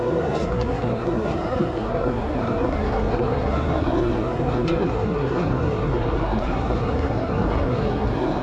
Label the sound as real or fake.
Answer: fake